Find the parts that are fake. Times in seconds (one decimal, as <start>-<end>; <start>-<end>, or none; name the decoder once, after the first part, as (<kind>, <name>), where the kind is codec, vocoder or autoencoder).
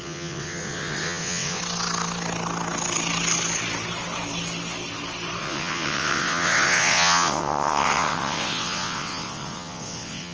0.0-1.6 (vocoder, WaveNeXt); 5.4-10.3